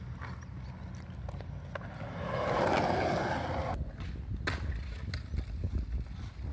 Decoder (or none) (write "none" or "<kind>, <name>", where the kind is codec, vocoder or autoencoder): none